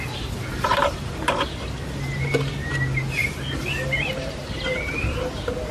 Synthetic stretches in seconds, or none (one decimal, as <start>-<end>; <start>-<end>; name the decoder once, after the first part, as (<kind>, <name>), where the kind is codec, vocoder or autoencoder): 0.7-2.5 (vocoder, BigVGAN v2); 3.2-4.4